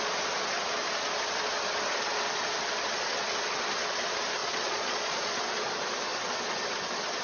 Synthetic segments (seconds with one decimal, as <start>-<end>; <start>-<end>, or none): 4.4-5.3